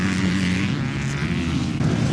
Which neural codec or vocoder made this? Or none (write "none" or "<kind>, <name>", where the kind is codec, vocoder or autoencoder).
none